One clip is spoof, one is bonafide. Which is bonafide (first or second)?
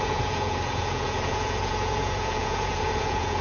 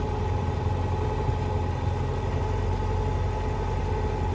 second